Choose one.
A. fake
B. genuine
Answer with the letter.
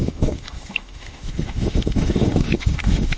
A